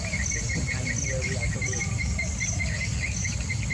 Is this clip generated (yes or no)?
no